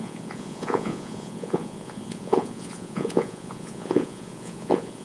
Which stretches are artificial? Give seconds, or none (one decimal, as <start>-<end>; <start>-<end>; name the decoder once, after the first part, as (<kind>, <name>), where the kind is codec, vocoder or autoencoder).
0.0-5.0 (vocoder, Vocos)

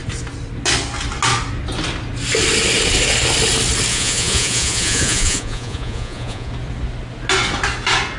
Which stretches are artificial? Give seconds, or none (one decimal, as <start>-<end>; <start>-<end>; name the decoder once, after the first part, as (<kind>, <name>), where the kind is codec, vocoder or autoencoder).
3.9-6.5 (vocoder, Vocos)

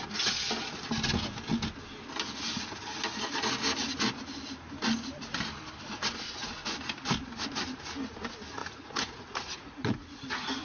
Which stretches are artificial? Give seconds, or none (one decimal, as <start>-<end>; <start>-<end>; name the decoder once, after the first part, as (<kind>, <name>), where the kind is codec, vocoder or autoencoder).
8.6-10.2 (vocoder, Vocos)

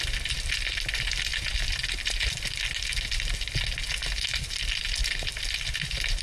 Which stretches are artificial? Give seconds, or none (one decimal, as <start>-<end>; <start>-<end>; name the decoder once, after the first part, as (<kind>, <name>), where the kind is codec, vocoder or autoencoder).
none

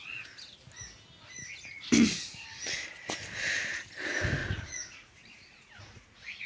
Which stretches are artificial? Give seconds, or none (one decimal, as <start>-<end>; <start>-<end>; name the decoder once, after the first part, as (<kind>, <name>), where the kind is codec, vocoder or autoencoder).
4.4-6.5 (vocoder, Vocos)